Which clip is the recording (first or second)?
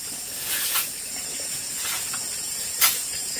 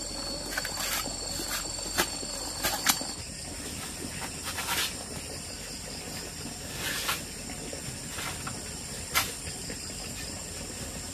second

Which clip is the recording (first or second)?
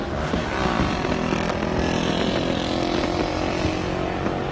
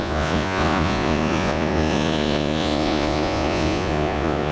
first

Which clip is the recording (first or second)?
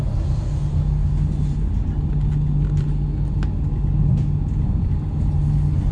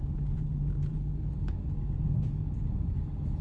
first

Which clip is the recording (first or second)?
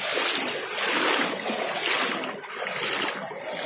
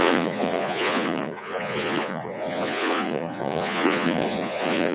first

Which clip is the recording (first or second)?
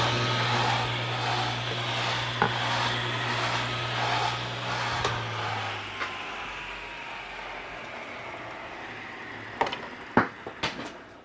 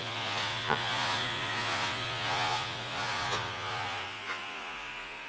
first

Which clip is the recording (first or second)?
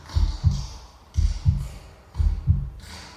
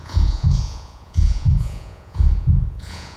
first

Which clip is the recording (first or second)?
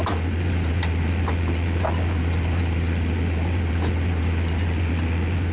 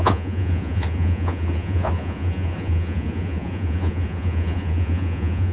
first